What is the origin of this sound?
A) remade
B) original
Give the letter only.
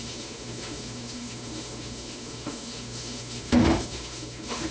A